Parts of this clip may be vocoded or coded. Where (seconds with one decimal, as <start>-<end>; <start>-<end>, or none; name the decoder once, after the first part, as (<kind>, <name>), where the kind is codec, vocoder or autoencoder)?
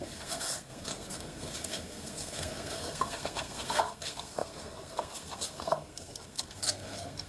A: 0.0-7.3 (codec, SNAC)